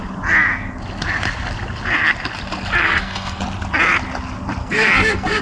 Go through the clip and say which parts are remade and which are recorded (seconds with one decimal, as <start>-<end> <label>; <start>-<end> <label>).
0.0-2.8 recorded; 2.8-3.4 remade; 3.4-4.6 recorded; 4.6-5.4 remade